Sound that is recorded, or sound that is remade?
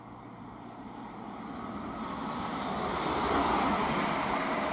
recorded